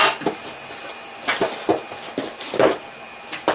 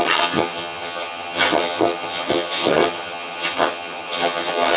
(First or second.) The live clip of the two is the first